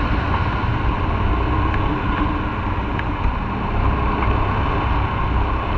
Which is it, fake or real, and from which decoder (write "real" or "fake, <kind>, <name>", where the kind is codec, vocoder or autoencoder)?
real